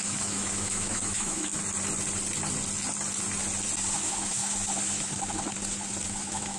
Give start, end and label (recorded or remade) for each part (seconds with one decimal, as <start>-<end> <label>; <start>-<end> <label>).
0.0-1.5 remade; 1.5-4.0 recorded; 4.0-4.4 remade; 4.4-6.1 recorded; 6.1-6.6 remade